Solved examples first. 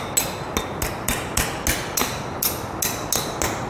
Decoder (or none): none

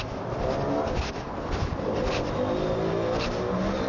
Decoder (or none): none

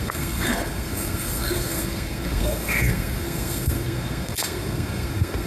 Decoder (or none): codec, SNAC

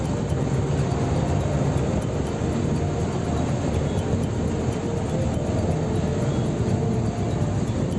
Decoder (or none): none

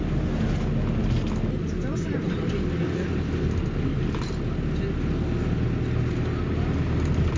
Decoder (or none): none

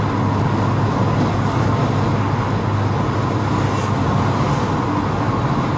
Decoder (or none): none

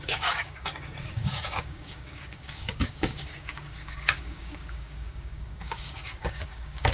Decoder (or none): codec, DAC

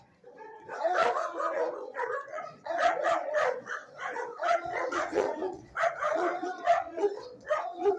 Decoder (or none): vocoder, Vocos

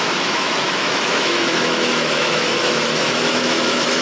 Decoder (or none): autoencoder, DAC-VAE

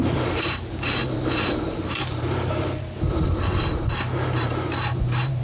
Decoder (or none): vocoder, BigVGAN v2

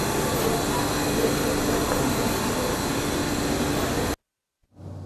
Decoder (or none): none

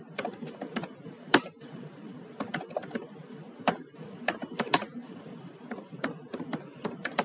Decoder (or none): vocoder, BigVGAN v2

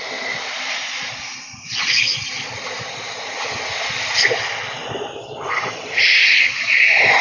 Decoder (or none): vocoder, BigVGAN v2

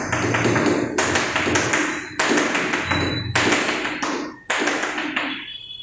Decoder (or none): none